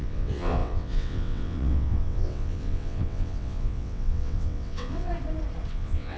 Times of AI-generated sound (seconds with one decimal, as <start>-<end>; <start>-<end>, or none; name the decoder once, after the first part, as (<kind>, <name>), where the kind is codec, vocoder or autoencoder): 0.0-5.1 (vocoder, WaveNeXt); 5.7-6.2